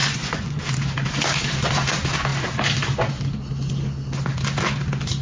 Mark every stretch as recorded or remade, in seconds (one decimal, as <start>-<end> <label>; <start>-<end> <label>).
0.0-0.6 remade; 0.6-5.2 recorded